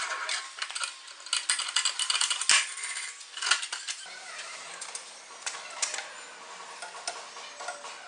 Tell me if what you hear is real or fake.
real